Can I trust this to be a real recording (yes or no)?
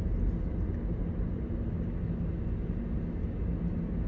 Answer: yes